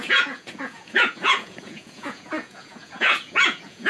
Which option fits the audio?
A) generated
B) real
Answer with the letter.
A